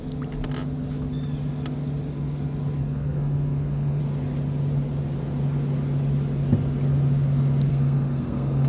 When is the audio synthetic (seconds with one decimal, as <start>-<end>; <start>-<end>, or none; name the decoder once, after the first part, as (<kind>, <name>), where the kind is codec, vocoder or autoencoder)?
2.8-4.0 (codec, SNAC); 7.7-8.7

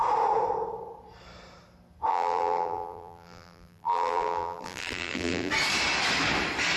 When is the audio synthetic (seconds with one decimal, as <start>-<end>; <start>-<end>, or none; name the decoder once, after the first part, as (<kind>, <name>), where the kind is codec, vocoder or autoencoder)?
2.1-5.5 (vocoder, BigVGAN v2)

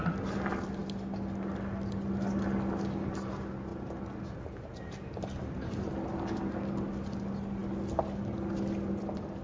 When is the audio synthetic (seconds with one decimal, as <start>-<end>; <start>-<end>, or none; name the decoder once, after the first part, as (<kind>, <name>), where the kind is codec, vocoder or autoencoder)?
none

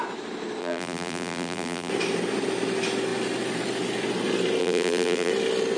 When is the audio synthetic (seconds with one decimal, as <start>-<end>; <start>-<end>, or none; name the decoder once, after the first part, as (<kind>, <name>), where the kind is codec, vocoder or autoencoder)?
0.6-1.9 (vocoder, BigVGAN v2); 4.6-5.3